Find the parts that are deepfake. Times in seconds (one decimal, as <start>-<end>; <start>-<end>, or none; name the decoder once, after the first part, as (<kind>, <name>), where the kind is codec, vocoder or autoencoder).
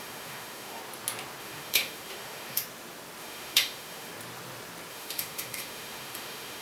0.0-0.8 (autoencoder, DAC-VAE); 1.4-2.6; 3.2-4.1; 4.9-6.6